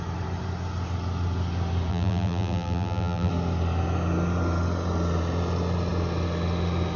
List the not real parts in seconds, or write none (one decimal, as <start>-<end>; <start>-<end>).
1.9-3.3